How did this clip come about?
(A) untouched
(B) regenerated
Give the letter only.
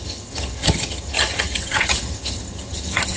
B